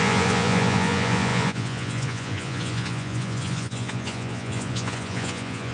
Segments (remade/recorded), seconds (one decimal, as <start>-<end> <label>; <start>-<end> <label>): 0.0-5.7 remade